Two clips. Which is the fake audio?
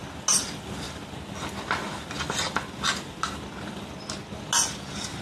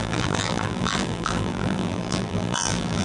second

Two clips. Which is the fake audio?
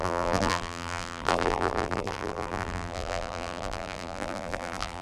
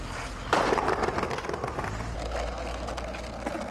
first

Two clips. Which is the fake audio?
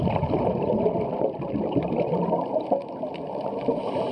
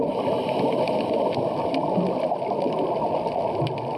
first